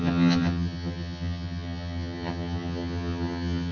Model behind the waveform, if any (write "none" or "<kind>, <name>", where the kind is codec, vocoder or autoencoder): vocoder, HiFi-GAN